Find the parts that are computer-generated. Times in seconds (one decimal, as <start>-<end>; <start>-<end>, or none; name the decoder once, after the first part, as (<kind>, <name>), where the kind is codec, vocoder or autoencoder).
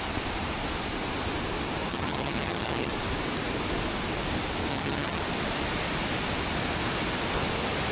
1.9-2.9 (vocoder, HiFi-GAN); 4.7-5.2